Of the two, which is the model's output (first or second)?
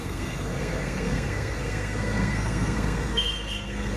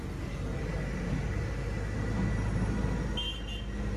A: first